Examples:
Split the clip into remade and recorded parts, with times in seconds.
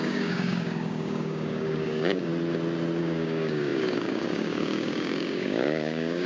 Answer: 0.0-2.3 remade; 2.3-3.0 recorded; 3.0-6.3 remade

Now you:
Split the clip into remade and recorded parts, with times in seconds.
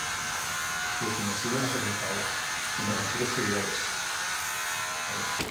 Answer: 0.0-0.9 recorded; 0.9-1.6 remade; 1.6-5.5 recorded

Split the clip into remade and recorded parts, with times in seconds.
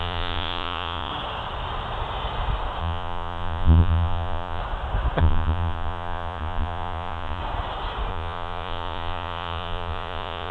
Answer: 0.0-1.1 remade; 1.1-2.8 recorded; 2.8-4.6 remade; 4.6-5.2 recorded; 5.2-7.4 remade; 7.4-8.1 recorded; 8.1-10.5 remade